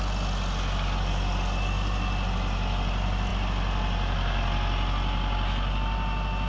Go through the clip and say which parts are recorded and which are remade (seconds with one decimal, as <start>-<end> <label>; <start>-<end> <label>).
0.0-6.5 recorded